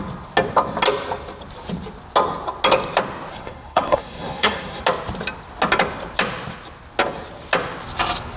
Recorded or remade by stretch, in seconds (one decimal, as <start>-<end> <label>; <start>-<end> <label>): 0.0-3.3 recorded; 3.3-4.8 remade; 4.8-8.4 recorded